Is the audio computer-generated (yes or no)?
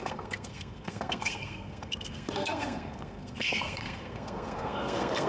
yes